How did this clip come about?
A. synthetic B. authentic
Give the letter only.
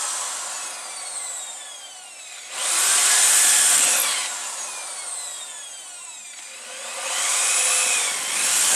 B